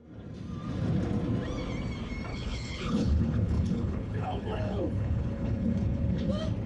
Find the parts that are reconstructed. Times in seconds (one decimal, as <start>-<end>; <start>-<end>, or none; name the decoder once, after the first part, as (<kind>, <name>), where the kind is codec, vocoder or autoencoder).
2.3-6.3 (codec, HILCodec)